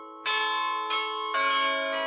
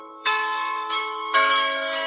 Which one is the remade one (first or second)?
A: second